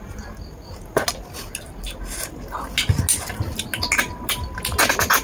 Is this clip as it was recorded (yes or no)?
yes